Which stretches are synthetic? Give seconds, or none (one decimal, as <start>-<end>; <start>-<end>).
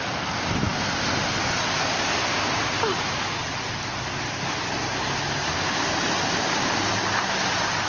none